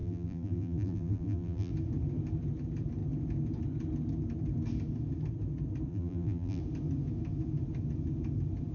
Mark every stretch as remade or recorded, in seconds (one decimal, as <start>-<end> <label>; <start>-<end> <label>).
0.0-1.7 remade; 1.7-5.9 recorded; 5.9-6.6 remade; 6.6-8.7 recorded